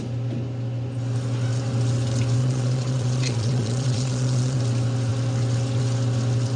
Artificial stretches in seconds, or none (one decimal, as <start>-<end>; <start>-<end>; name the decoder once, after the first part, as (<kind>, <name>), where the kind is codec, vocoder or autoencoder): 2.4-4.6 (vocoder, Vocos)

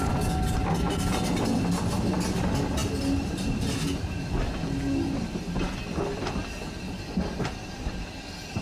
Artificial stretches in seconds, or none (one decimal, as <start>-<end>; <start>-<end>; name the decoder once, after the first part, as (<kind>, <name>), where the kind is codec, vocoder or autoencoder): none